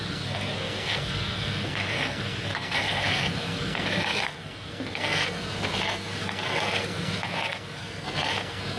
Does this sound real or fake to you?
fake